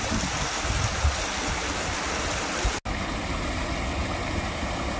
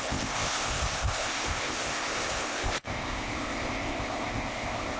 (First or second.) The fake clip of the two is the second